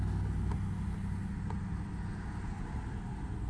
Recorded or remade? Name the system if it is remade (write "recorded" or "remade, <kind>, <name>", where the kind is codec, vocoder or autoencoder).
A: recorded